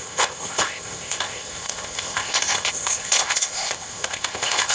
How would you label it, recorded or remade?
remade